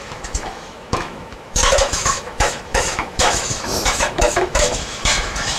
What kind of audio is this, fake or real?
fake